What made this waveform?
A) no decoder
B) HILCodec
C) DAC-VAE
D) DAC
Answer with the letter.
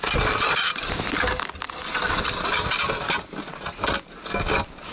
A